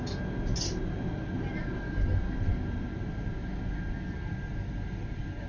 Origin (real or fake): real